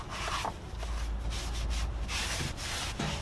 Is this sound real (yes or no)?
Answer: yes